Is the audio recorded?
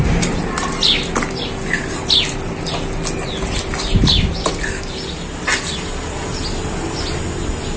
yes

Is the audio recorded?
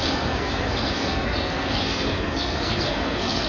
no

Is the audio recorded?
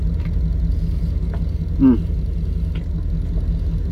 yes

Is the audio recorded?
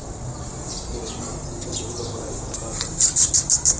yes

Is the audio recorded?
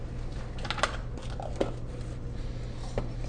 yes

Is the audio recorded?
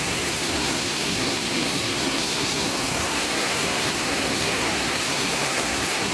no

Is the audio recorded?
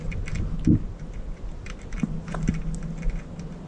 yes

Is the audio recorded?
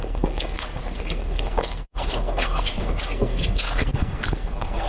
no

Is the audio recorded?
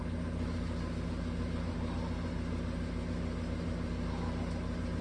yes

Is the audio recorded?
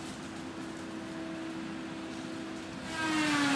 yes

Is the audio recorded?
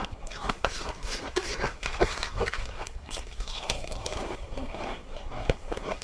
no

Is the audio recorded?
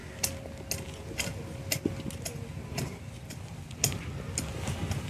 yes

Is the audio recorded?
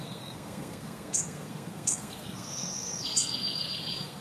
no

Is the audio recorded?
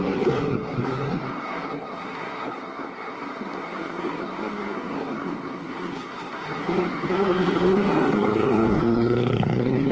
no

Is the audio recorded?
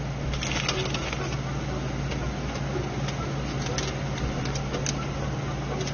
yes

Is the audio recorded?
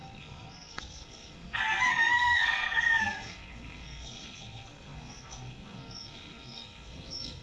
no